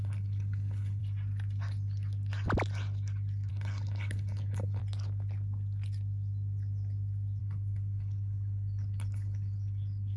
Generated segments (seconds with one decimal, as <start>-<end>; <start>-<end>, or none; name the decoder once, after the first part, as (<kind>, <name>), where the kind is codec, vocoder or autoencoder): 0.0-1.0 (codec, HILCodec); 3.5-4.8; 7.4-10.2